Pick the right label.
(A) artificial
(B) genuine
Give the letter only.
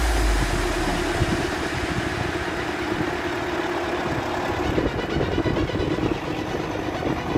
B